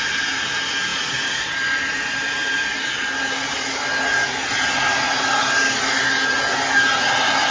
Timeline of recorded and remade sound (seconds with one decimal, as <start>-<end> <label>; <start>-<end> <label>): 0.0-7.5 recorded

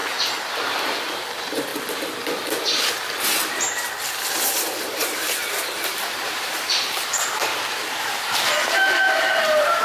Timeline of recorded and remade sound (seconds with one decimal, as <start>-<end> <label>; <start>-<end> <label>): 0.0-1.7 remade; 1.7-2.9 recorded; 2.9-7.5 remade; 7.5-8.1 recorded; 8.1-9.8 remade

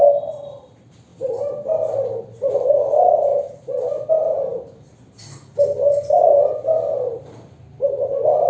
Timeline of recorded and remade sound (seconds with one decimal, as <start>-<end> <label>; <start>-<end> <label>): 0.0-1.1 remade; 1.1-2.7 recorded; 2.7-3.3 remade; 3.3-4.1 recorded; 4.1-8.5 remade